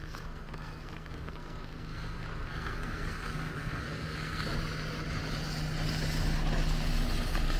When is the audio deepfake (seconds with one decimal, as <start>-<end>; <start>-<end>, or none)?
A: 0.0-4.6